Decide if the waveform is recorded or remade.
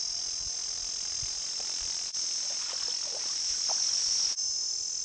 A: recorded